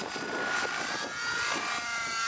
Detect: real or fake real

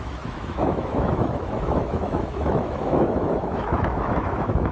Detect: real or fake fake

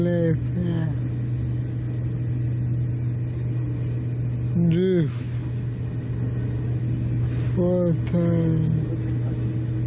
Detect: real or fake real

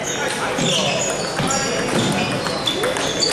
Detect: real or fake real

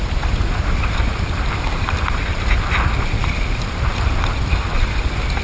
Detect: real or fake real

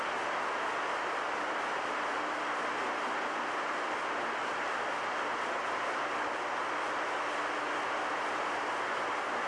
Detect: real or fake real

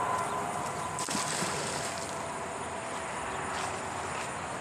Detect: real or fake real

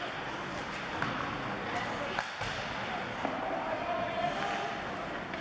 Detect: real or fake real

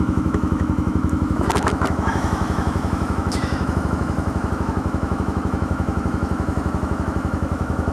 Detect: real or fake fake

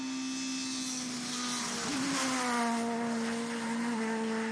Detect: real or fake real